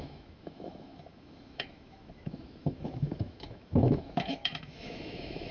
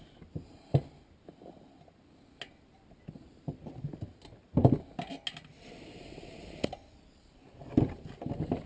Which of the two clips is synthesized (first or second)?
first